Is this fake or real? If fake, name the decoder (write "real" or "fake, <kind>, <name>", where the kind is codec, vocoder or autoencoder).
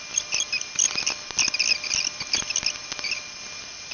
real